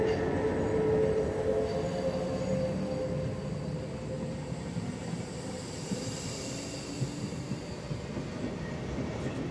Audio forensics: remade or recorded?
recorded